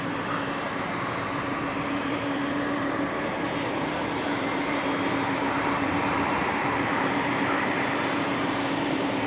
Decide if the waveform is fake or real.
fake